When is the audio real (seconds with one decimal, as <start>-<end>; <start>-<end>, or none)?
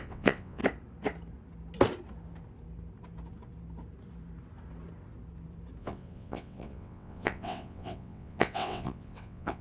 0.6-5.8